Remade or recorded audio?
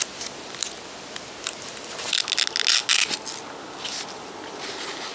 recorded